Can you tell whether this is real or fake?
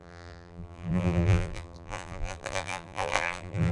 fake